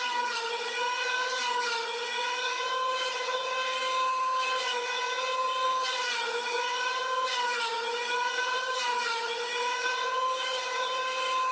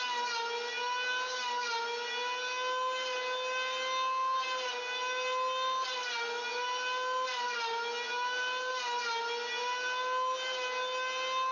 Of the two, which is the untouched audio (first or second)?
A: second